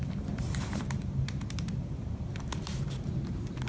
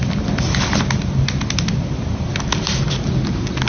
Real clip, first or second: second